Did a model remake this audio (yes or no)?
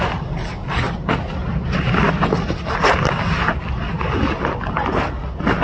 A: no